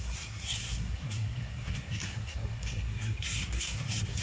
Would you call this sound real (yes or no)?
no